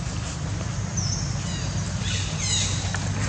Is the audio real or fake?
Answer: real